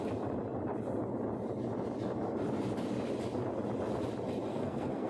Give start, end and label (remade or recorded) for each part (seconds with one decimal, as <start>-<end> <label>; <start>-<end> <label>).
0.0-4.5 recorded; 4.5-5.1 remade